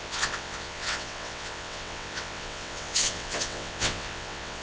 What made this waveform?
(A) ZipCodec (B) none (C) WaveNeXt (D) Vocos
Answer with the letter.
C